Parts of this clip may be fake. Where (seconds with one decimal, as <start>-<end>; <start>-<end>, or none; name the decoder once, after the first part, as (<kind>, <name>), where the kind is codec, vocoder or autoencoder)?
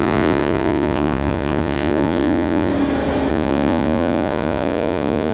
0.0-2.7 (vocoder, Vocos); 3.3-5.3